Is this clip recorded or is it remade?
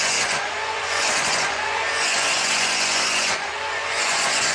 remade